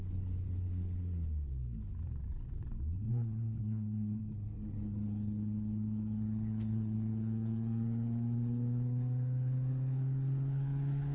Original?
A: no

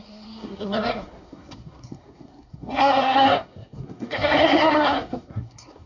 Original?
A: no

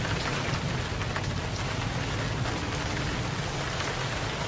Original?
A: yes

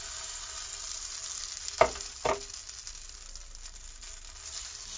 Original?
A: yes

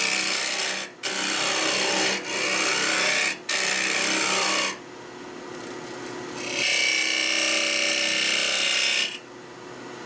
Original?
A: yes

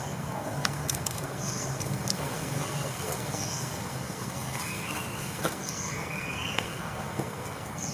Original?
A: no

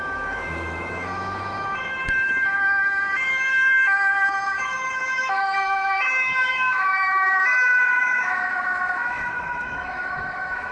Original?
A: no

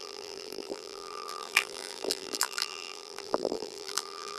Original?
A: no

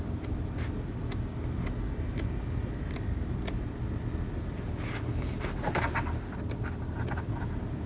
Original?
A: yes